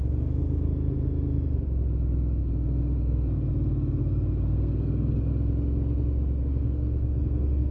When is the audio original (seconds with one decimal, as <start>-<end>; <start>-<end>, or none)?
0.0-2.4; 3.5-4.0; 5.3-6.4